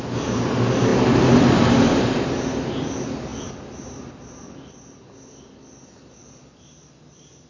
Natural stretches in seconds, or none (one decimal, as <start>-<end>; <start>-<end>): 0.0-7.5